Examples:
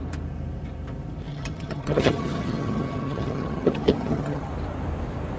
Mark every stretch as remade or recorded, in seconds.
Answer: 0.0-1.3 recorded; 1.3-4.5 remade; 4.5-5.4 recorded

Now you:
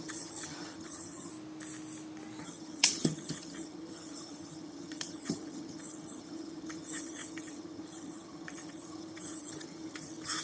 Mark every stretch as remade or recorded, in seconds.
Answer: 0.0-1.3 remade; 1.3-2.4 recorded; 2.4-10.4 remade

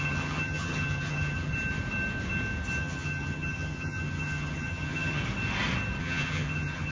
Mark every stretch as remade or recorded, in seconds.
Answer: 0.0-1.5 remade; 1.5-2.8 recorded; 2.8-5.2 remade; 5.2-6.0 recorded; 6.0-6.9 remade

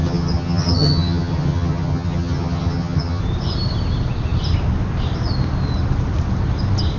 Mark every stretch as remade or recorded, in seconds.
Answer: 0.0-3.2 remade; 3.2-7.0 recorded

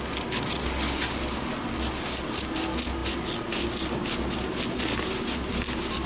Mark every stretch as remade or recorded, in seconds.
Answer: 0.0-6.1 recorded